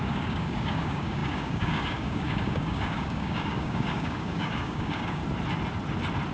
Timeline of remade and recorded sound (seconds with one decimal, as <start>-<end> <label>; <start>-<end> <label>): 0.0-5.2 remade; 5.2-6.3 recorded